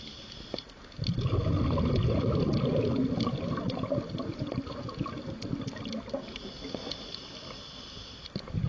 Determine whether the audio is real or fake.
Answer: real